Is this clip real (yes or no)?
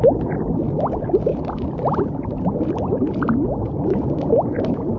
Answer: yes